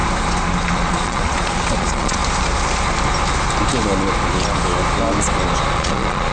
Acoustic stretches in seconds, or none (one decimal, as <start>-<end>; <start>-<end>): 0.0-0.7; 2.2-5.7